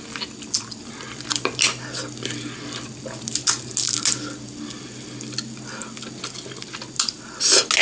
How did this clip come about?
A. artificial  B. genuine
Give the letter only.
B